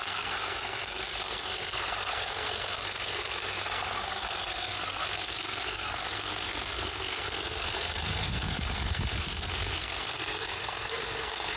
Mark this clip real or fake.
fake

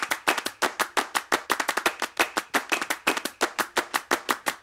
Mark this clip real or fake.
real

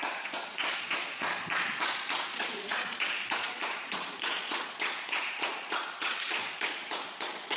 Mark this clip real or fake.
fake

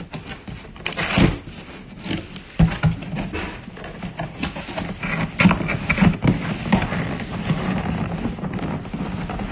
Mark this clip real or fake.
real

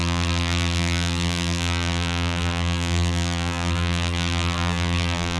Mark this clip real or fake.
fake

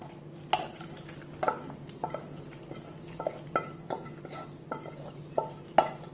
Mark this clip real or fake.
real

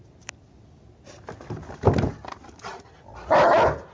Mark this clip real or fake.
real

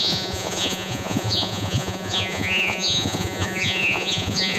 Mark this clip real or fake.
fake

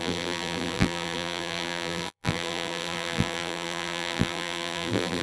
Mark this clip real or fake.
fake